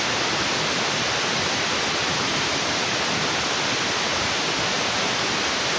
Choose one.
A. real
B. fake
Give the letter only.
A